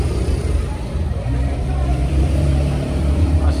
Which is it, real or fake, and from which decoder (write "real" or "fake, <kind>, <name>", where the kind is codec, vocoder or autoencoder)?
fake, vocoder, BigVGAN v2